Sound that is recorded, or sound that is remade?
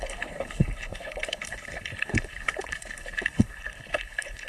remade